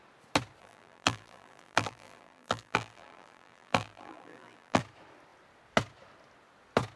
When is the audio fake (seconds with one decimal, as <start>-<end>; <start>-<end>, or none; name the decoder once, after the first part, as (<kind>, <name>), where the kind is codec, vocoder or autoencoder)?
0.6-4.8 (vocoder, BigVGAN v2)